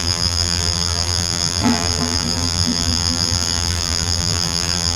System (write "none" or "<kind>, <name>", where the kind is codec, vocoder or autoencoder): vocoder, BigVGAN v2